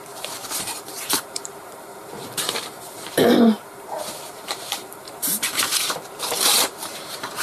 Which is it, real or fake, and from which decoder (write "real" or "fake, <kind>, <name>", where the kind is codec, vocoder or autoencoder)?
fake, vocoder, BigVGAN v2